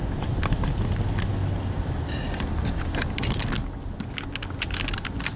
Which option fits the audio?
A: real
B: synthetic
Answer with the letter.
A